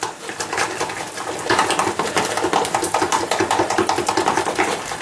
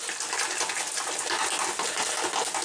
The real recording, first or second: second